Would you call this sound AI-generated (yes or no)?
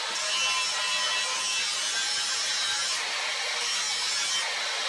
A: no